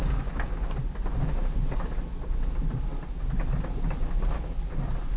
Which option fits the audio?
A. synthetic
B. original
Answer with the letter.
B